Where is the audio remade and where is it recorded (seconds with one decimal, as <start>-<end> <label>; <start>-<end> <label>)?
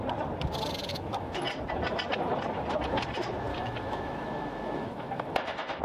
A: 0.0-0.9 recorded; 0.9-1.4 remade; 1.4-3.5 recorded; 3.5-5.8 remade